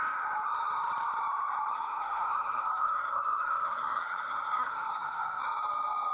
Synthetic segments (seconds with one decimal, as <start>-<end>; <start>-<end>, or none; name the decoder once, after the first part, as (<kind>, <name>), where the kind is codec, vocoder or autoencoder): 1.7-5.4 (codec, SNAC)